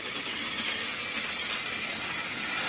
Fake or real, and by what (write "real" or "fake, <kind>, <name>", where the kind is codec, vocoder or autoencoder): real